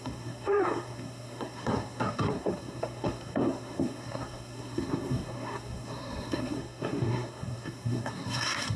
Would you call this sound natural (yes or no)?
no